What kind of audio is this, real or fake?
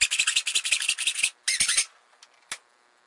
real